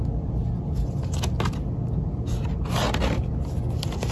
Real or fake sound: real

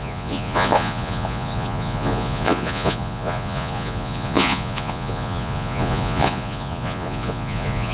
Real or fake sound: fake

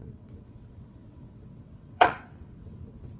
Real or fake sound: fake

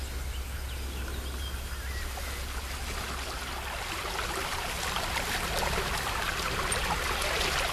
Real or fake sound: real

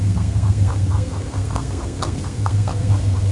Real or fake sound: fake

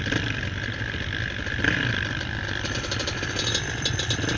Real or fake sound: real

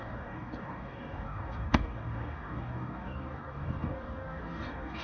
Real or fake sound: fake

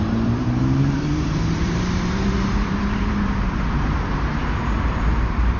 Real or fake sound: fake